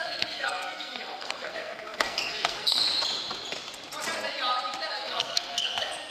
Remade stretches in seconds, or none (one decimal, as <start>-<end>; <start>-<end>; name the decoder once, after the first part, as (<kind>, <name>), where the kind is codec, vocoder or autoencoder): 0.0-2.8 (codec, SNAC); 4.9-6.1